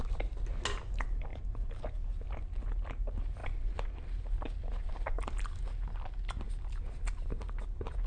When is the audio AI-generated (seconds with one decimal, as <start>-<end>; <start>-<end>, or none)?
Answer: 1.3-2.1; 3.4-6.7